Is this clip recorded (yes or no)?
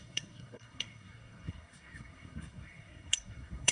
no